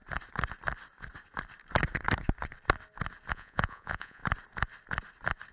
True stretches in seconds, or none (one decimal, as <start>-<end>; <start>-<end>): 0.0-3.3; 4.2-5.5